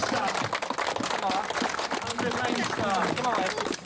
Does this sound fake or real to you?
real